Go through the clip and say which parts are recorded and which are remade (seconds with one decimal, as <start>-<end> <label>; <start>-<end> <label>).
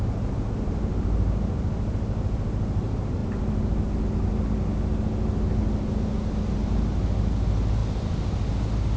0.0-9.0 recorded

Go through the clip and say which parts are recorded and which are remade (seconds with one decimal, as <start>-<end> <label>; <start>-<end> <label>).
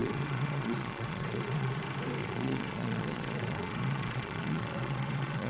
0.0-1.8 remade; 1.8-2.2 recorded; 2.2-5.5 remade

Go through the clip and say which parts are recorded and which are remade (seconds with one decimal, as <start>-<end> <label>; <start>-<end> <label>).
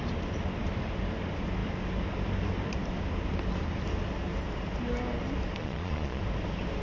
0.0-5.6 recorded; 5.6-6.2 remade; 6.2-6.8 recorded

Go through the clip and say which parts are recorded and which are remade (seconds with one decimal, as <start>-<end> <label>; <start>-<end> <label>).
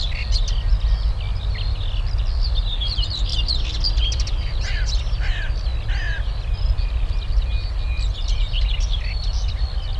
0.0-10.0 recorded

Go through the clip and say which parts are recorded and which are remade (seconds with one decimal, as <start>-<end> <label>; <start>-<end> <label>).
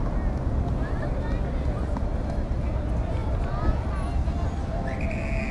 0.0-5.5 recorded